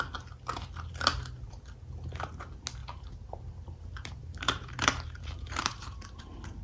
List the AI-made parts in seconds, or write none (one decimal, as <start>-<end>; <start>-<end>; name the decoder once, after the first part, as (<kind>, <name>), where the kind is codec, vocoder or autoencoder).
2.8-6.6 (vocoder, BigVGAN v2)